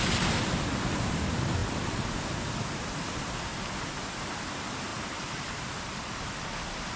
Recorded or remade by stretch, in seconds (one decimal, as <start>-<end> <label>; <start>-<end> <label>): 0.0-1.6 recorded; 1.6-2.5 remade; 2.5-3.5 recorded; 3.5-4.2 remade; 4.2-4.9 recorded; 4.9-5.8 remade; 5.8-7.0 recorded